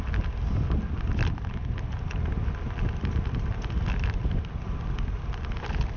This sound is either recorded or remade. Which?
recorded